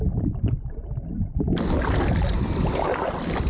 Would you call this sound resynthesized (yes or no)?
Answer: no